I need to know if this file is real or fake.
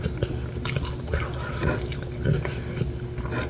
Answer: real